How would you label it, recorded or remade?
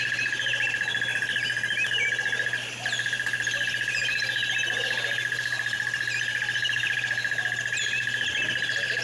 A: recorded